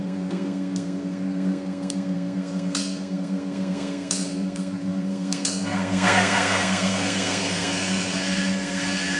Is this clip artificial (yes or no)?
yes